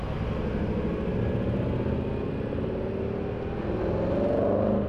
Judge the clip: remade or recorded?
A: recorded